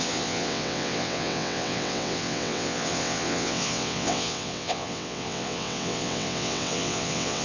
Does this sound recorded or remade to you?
remade